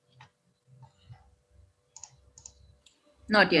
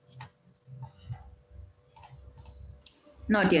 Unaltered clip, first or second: second